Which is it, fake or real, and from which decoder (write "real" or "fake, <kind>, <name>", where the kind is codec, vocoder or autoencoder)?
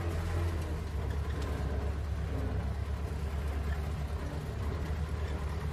real